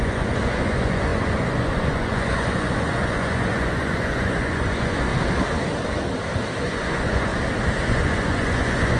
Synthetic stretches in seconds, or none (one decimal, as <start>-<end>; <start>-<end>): 0.0-5.1; 6.6-7.3; 7.8-9.0